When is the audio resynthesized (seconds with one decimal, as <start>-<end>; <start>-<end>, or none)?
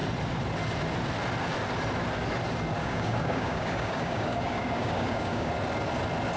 2.8-5.5